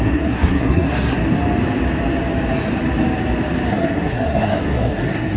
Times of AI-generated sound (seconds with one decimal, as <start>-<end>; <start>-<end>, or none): 0.0-1.2; 3.7-5.4